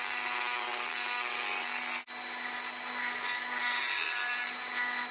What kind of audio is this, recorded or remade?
recorded